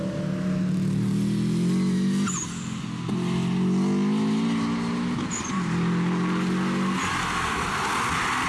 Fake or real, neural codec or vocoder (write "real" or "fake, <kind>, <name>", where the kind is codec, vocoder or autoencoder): real